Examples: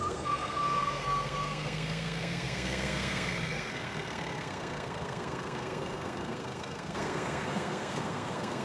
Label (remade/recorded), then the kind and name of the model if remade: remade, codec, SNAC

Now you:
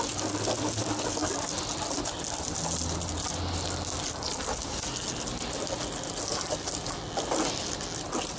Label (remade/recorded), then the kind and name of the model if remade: recorded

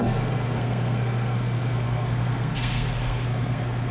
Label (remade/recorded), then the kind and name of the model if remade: remade, codec, SNAC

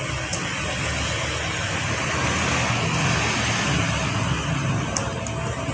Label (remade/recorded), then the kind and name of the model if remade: recorded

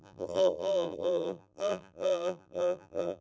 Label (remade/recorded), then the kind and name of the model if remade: remade, vocoder, BigVGAN v2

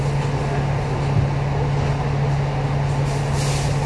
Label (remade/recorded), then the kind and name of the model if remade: recorded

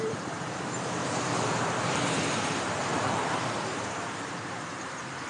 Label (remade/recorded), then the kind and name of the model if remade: remade, vocoder, BigVGAN v2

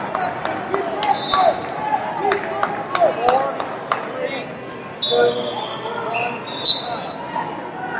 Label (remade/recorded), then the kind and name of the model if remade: recorded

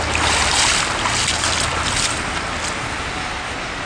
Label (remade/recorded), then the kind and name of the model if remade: recorded